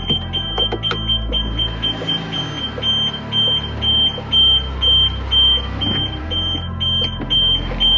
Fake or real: real